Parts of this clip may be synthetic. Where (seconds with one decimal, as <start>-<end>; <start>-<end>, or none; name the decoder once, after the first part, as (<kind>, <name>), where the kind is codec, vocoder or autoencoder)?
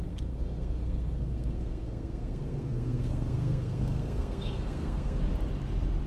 0.0-5.2 (codec, SNAC)